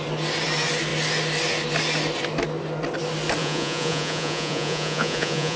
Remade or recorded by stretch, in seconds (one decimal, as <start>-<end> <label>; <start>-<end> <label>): 0.0-3.4 recorded; 3.4-5.6 remade

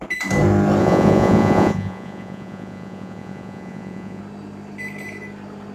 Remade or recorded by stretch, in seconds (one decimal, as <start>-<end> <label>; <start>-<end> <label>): 0.0-0.8 recorded; 0.8-4.2 remade; 4.2-5.7 recorded

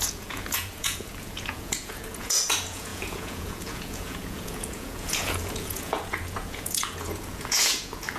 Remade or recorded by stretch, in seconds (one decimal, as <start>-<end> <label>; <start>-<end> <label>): 0.0-8.2 remade

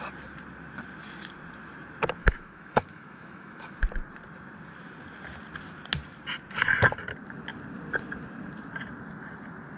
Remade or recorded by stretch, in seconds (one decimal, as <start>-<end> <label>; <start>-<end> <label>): 0.0-2.2 recorded; 2.2-3.8 remade; 3.8-9.8 recorded

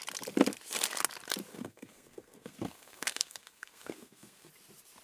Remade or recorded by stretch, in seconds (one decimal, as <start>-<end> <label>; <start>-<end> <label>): 0.0-1.5 recorded; 1.5-4.5 remade; 4.5-5.0 recorded

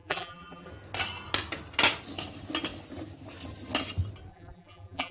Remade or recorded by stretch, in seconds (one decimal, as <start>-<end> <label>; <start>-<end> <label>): 0.0-0.7 remade; 0.7-4.3 recorded; 4.3-5.1 remade